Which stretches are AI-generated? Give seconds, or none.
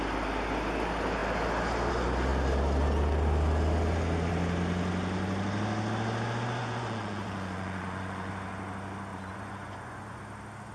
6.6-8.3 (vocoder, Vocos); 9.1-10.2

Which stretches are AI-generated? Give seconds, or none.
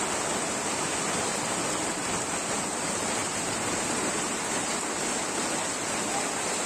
3.2-4.5 (vocoder, BigVGAN v2)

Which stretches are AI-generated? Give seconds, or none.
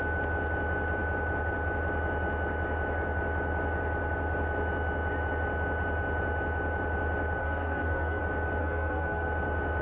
7.4-8.2 (codec, SNAC); 8.6-9.3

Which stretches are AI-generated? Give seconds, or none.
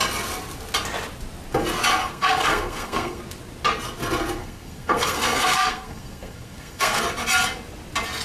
2.0-3.2 (codec, SNAC); 4.4-7.0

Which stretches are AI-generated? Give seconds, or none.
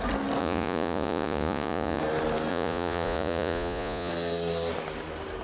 0.4-2.0 (vocoder, Vocos); 2.5-4.1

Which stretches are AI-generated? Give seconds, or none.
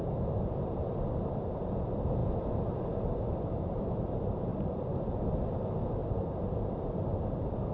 2.2-2.8 (vocoder, BigVGAN v2); 4.5-5.2; 6.0-6.7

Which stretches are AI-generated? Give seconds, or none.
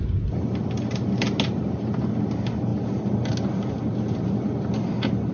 none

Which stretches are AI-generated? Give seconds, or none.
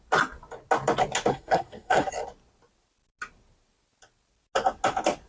1.3-2.1 (codec, SNAC)